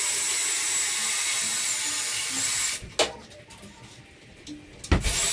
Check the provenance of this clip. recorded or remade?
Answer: recorded